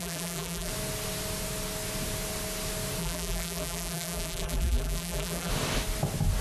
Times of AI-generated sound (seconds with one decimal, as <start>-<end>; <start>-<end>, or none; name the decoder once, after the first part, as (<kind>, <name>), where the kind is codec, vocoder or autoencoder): 0.0-0.7 (vocoder, BigVGAN v2); 3.0-5.5